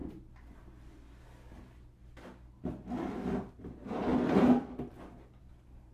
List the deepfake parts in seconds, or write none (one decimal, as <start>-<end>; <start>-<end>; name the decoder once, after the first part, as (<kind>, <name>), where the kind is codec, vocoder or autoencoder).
3.5-4.1 (vocoder, BigVGAN v2); 5.4-5.9